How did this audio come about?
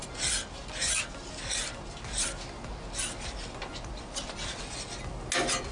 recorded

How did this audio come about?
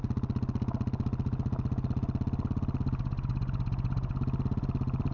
recorded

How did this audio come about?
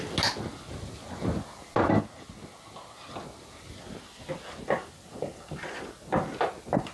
recorded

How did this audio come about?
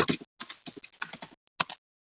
recorded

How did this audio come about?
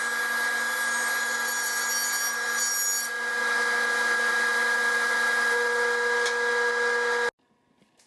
recorded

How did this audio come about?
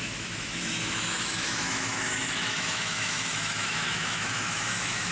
remade